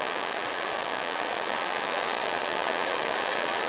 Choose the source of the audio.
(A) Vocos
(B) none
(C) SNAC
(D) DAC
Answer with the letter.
A